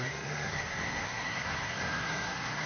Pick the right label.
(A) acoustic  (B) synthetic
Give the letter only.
B